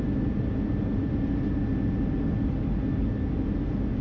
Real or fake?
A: real